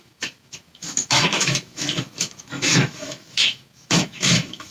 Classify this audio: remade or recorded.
remade